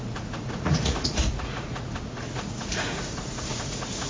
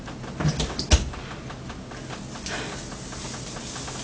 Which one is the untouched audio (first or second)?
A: second